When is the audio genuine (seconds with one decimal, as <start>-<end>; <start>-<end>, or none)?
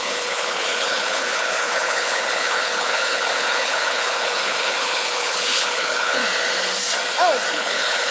6.2-7.5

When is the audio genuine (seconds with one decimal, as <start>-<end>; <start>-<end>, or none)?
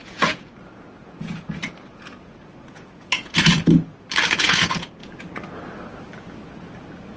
3.5-4.4; 5.0-7.2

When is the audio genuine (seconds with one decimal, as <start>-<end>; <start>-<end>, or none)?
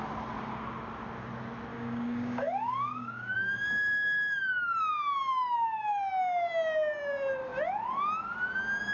0.0-1.7; 4.8-5.2; 6.0-8.9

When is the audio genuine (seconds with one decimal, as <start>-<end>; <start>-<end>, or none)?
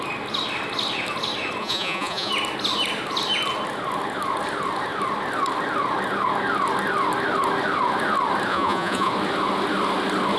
0.0-1.6; 2.3-8.5; 9.1-10.4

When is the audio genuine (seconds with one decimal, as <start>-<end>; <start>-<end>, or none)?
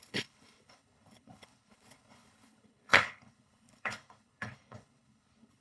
none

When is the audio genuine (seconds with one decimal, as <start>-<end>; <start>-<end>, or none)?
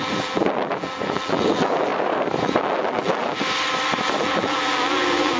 1.9-2.4; 3.4-4.2